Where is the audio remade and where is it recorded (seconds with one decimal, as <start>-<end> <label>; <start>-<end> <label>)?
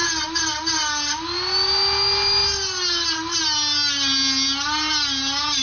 0.0-5.6 recorded